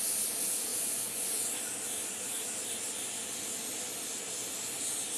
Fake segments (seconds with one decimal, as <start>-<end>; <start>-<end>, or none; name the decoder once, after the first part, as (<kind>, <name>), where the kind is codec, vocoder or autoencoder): 0.7-1.5 (vocoder, Vocos)

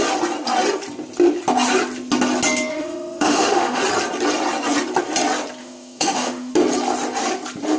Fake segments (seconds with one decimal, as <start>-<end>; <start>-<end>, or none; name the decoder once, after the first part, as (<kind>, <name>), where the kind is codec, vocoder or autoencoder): 2.7-3.8 (autoencoder, DAC-VAE); 5.6-6.5

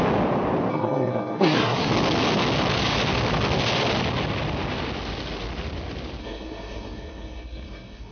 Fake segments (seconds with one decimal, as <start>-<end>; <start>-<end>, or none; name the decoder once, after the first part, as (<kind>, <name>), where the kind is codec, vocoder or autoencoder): 0.7-1.9 (codec, SNAC); 6.2-8.1

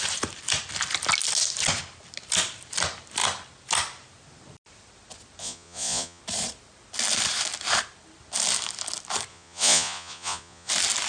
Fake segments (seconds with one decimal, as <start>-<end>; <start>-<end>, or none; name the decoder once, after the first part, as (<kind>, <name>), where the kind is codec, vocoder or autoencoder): 5.4-6.2 (vocoder, Vocos); 9.3-10.7

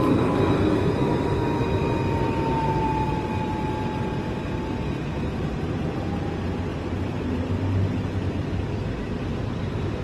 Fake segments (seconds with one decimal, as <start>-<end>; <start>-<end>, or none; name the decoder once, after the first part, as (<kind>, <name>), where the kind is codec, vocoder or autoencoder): none

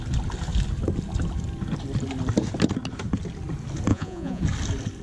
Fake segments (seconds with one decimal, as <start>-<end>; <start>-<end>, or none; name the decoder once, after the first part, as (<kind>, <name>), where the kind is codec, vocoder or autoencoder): 3.9-4.4 (vocoder, Vocos)

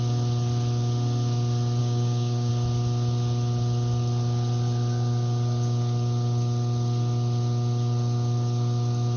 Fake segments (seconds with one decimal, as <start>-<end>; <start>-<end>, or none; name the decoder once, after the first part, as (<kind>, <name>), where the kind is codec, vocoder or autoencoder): 1.8-2.5 (codec, DAC)

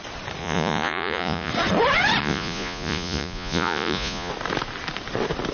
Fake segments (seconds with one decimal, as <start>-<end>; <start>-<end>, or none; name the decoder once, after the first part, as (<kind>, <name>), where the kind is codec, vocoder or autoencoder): 0.4-1.5 (vocoder, Vocos); 2.2-4.3